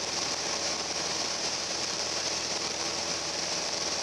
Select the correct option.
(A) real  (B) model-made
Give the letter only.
B